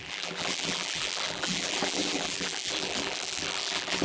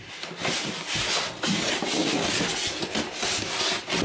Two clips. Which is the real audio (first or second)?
second